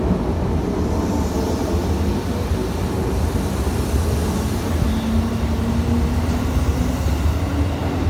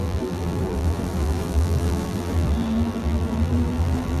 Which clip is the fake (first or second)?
second